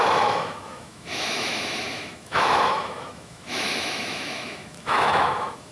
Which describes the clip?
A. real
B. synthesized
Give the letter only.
B